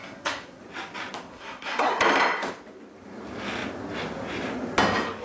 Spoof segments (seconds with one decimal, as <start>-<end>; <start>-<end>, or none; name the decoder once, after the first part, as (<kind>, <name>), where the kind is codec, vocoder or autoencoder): 0.0-0.6 (codec, SNAC); 1.3-2.0